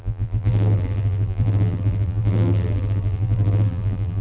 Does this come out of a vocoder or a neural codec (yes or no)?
yes